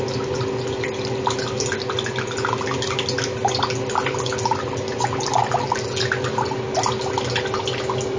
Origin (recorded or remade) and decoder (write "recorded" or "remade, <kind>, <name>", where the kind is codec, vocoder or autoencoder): recorded